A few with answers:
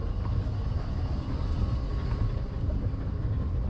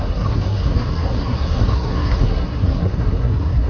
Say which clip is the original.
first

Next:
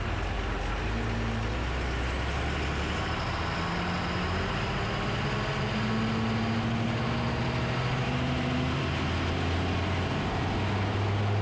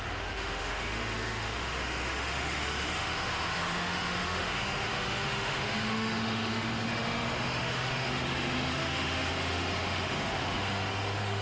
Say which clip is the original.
first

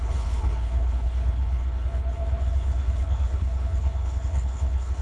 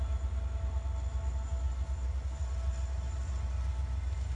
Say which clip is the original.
second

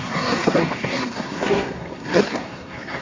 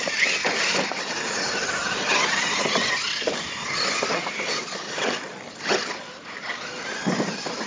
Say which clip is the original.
second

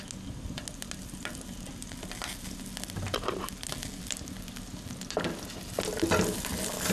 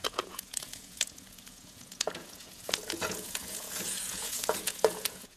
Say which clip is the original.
first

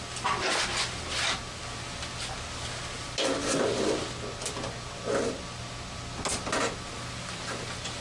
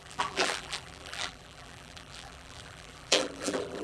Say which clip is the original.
first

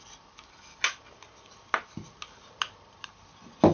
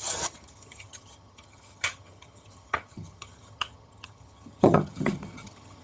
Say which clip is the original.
first